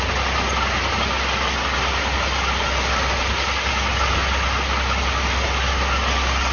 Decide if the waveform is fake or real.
real